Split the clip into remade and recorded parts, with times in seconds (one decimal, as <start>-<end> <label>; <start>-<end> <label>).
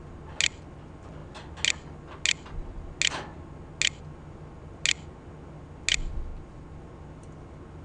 0.0-7.8 recorded